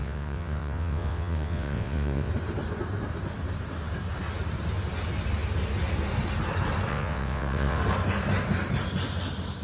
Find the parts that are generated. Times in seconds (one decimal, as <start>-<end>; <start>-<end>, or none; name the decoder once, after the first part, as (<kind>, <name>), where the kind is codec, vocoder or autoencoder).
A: 0.0-2.3 (vocoder, WaveNeXt); 6.9-7.8